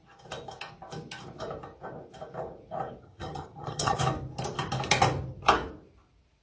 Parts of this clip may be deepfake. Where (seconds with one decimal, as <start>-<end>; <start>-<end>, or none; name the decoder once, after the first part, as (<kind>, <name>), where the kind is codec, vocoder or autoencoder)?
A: 3.0-4.0 (vocoder, HiFi-GAN)